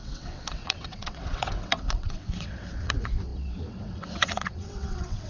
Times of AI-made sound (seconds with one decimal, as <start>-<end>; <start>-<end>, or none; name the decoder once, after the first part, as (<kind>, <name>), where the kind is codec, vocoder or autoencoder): 0.0-5.3 (vocoder, WaveNeXt)